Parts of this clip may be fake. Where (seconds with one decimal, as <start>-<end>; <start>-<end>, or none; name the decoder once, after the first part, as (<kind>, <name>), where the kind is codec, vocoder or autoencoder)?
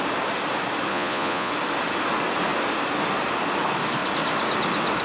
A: 0.9-1.5 (vocoder, Vocos)